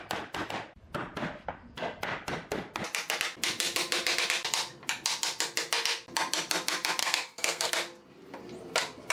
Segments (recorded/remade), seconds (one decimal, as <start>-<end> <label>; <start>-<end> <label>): 0.0-7.0 recorded; 7.0-7.7 remade; 7.7-9.1 recorded